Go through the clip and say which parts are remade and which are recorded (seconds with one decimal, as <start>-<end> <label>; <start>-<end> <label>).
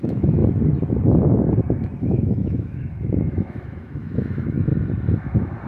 0.0-0.4 remade; 0.4-2.0 recorded; 2.0-4.7 remade; 4.7-5.7 recorded